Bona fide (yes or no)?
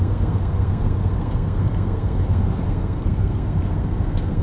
no